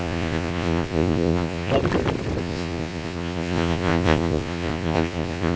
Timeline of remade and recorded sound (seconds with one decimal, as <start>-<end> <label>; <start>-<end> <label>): 0.0-1.7 remade; 1.7-2.4 recorded; 2.4-5.6 remade